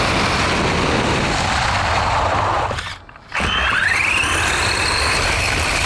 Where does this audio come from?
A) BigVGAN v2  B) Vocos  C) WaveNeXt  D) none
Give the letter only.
D